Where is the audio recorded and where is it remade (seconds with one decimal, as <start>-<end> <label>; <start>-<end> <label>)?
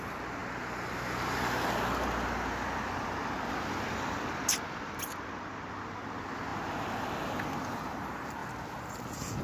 0.0-9.4 recorded